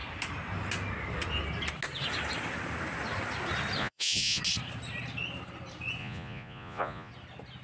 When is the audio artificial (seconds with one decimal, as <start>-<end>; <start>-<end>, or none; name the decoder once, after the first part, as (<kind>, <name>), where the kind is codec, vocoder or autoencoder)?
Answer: 3.8-4.4 (vocoder, Vocos); 6.0-7.1